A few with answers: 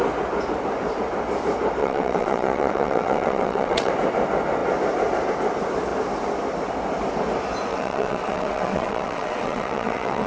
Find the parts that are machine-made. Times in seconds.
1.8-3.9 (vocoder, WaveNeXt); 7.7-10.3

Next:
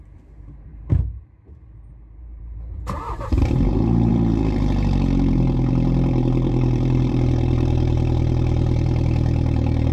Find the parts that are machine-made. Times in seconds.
0.0-9.9 (vocoder, BigVGAN v2)

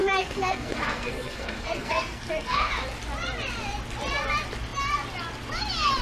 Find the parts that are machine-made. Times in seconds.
0.0-2.7 (codec, SNAC)

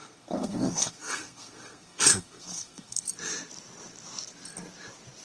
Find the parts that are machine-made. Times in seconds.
0.0-3.1 (codec, SNAC)

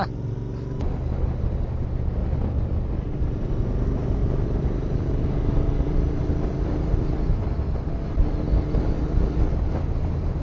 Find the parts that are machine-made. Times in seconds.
2.2-2.9 (vocoder, BigVGAN v2); 4.2-7.9